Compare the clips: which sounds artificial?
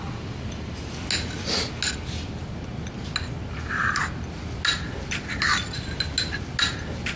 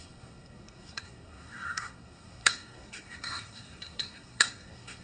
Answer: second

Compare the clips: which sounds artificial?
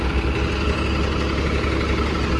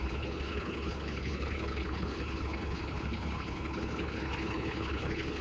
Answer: second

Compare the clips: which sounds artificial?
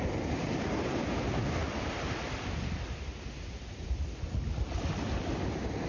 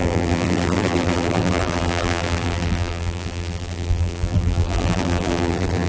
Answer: second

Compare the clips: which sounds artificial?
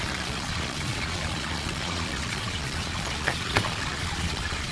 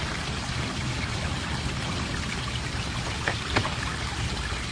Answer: first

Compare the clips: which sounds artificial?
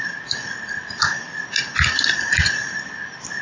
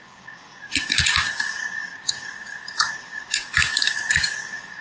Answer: second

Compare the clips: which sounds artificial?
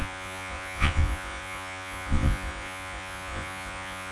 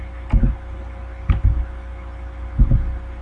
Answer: first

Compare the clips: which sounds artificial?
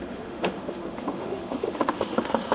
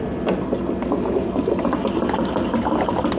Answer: first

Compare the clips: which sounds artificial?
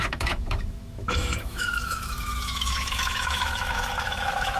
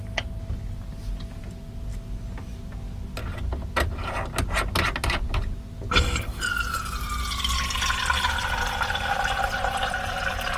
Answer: first